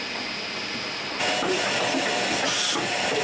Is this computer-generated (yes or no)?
no